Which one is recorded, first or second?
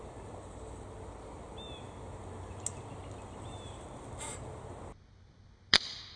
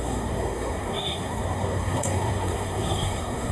first